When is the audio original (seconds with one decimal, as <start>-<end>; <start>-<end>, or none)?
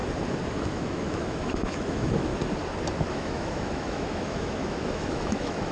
0.0-0.6; 2.3-3.1